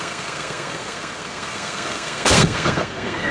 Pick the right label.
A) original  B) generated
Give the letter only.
B